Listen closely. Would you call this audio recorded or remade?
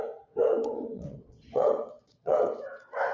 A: remade